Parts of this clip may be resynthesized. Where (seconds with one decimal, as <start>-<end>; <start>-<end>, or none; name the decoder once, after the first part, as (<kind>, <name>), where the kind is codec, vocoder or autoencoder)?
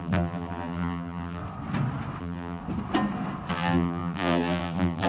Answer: 0.0-1.4 (vocoder, BigVGAN v2); 2.2-2.6; 3.5-5.1